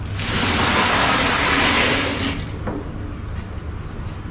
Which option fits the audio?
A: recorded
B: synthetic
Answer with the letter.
A